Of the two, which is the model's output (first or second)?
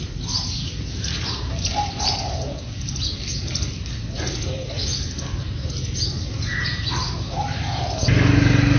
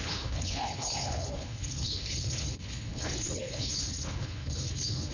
second